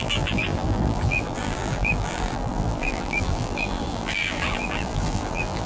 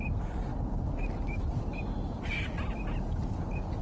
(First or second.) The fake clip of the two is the first